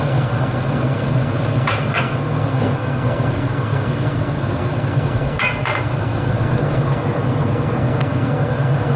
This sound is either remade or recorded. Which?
remade